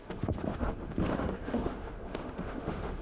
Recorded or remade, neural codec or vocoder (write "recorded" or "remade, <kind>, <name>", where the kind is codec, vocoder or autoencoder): remade, autoencoder, DAC-VAE